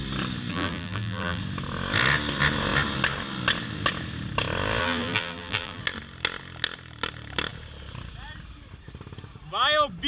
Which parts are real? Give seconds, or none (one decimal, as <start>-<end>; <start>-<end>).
0.0-0.5; 1.4-4.8; 5.8-10.1